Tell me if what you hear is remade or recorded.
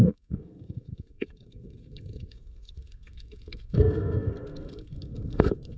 remade